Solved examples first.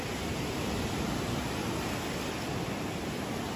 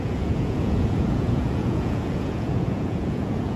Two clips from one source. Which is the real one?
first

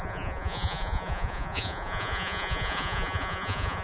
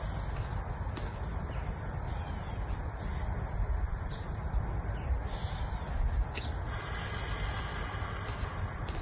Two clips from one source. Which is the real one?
second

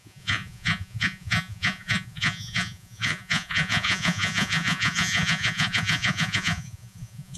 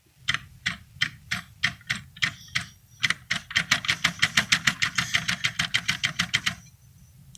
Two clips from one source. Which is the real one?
second